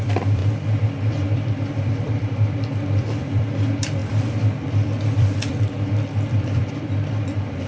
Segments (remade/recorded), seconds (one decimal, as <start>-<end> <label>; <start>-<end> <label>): 0.0-0.4 remade; 0.4-1.1 recorded; 1.1-7.7 remade